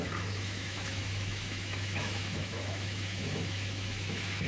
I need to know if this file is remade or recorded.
remade